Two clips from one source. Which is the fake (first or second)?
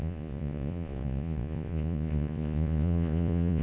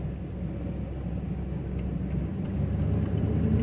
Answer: first